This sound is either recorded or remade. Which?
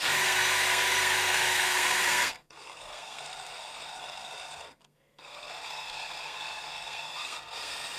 remade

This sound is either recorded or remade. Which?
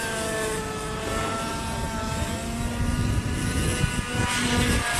recorded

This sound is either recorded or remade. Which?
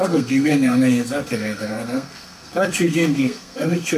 remade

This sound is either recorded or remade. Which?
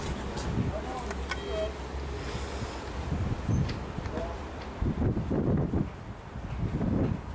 recorded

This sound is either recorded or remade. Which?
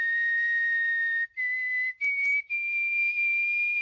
recorded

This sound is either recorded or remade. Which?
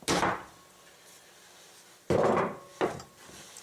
recorded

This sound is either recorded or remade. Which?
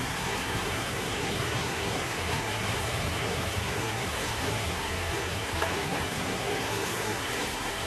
remade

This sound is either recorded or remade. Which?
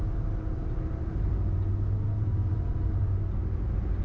recorded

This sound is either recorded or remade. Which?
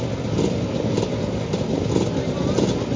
recorded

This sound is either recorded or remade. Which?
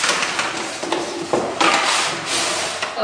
recorded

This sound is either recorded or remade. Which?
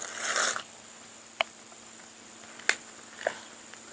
recorded